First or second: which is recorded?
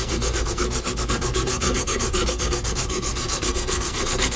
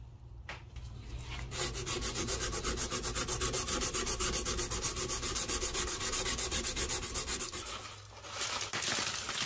second